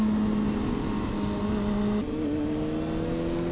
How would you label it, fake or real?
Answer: real